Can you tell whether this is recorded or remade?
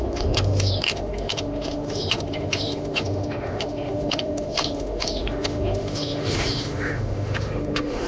remade